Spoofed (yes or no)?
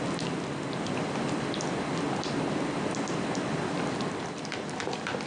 no